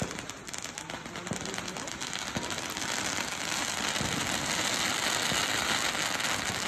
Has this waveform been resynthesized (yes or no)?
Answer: no